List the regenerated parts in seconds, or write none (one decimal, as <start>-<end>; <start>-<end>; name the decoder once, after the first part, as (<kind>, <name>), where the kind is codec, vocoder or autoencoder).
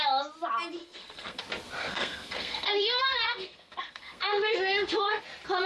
0.8-1.4 (codec, SNAC); 1.8-5.2